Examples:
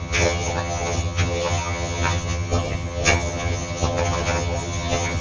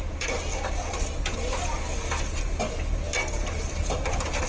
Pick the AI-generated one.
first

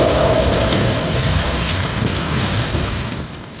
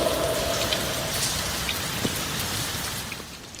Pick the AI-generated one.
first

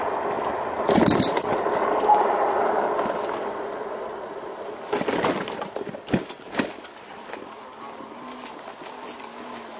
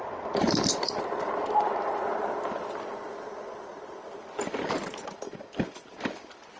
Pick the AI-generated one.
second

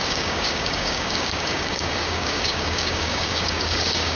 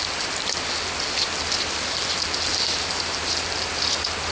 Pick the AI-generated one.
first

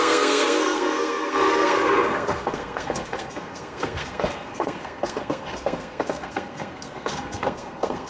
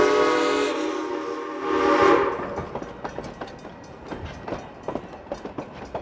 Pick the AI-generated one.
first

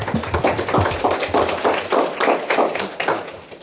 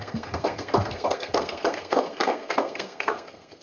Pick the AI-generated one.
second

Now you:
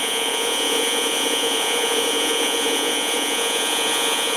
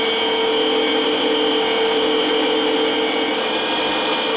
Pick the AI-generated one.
first